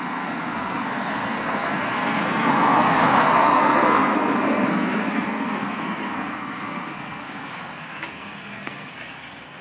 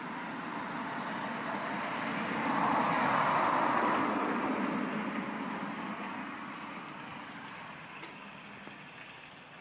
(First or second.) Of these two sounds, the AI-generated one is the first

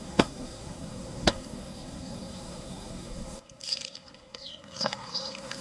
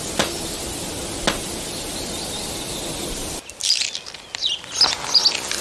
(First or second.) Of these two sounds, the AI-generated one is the first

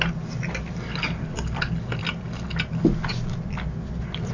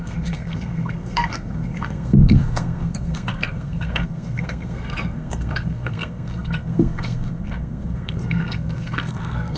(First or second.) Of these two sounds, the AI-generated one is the second